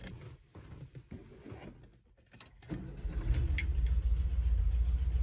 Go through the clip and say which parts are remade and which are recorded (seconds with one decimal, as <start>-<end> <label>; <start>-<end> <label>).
0.0-5.2 recorded

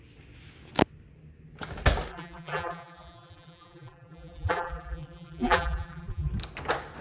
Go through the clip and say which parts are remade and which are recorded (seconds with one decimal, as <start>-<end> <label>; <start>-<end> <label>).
0.0-2.1 recorded; 2.1-6.3 remade; 6.3-7.0 recorded

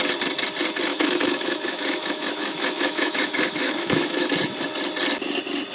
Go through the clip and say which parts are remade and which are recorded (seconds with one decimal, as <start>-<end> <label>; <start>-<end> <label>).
0.0-0.9 recorded; 0.9-4.3 remade; 4.3-5.7 recorded

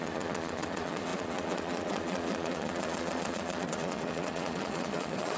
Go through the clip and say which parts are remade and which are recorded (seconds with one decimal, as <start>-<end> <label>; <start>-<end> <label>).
0.0-5.4 remade

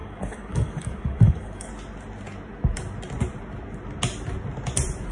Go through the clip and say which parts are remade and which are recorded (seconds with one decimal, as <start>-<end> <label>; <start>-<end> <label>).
0.0-1.7 remade; 1.7-5.1 recorded